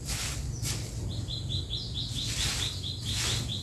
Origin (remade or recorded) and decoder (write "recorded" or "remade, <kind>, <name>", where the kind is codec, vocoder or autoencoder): recorded